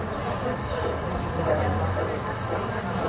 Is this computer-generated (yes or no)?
no